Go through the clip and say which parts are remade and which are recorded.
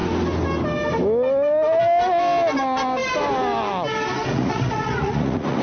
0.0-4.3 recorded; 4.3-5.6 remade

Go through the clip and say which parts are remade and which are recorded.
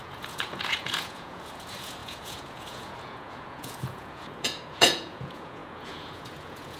0.0-6.8 remade